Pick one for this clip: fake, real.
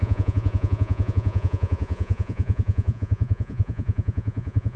fake